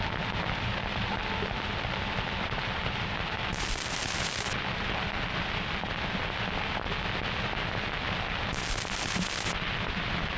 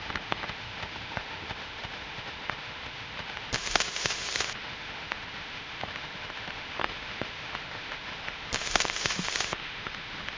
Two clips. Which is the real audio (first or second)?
first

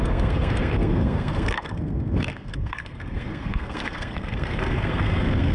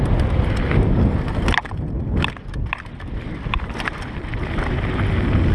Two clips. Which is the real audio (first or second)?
second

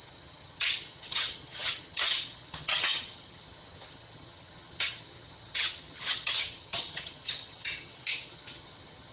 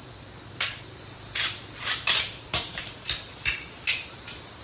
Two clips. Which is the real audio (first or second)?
second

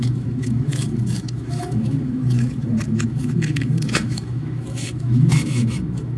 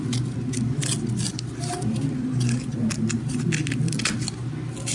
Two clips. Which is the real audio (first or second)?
second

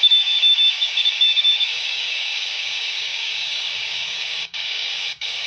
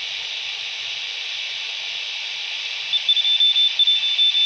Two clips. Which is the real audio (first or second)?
second